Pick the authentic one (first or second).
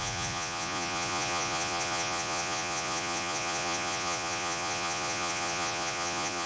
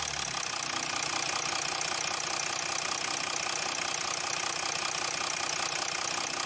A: second